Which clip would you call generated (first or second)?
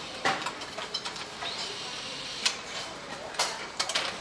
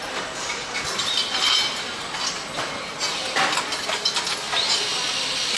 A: first